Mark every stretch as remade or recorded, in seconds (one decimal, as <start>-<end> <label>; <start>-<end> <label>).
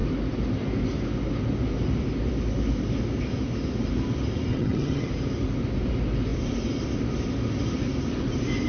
0.0-4.5 recorded; 4.5-5.1 remade; 5.1-8.7 recorded